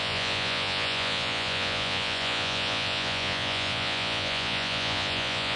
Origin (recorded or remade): remade